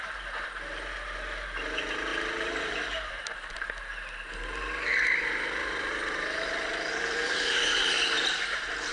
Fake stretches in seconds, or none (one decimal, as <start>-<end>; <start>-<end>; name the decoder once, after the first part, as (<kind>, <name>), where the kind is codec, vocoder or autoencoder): 2.1-3.7 (vocoder, BigVGAN v2); 4.9-8.9